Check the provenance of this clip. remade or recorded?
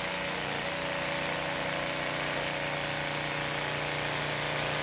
recorded